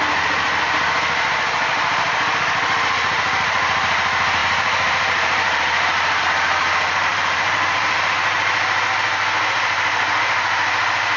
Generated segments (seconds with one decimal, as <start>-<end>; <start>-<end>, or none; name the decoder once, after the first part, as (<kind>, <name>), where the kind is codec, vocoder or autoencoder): 1.7-2.4 (vocoder, BigVGAN v2); 4.4-6.2; 7.1-7.8